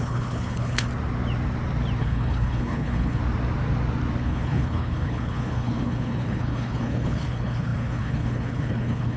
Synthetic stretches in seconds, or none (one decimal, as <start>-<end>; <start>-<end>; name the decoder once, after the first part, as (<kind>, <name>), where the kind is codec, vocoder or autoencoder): 0.0-0.9 (codec, HILCodec); 2.0-3.2; 4.2-9.2